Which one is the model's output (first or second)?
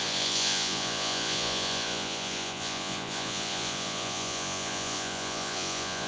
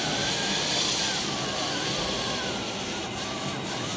first